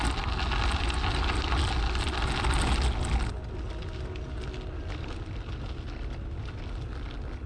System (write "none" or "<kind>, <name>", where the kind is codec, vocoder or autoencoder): none